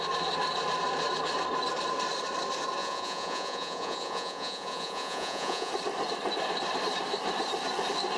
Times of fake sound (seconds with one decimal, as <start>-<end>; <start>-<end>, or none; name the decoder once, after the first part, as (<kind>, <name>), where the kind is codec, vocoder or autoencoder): 2.8-5.7 (vocoder, Vocos)